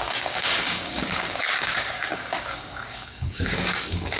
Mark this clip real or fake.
fake